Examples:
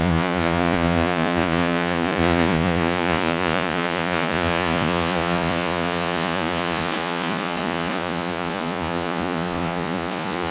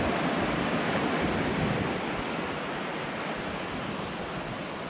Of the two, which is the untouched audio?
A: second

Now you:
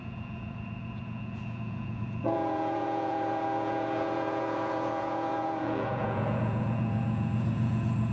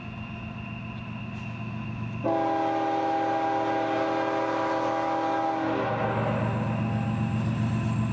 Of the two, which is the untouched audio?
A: second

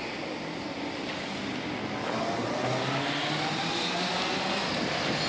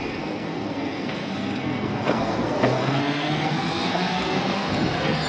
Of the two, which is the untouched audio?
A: first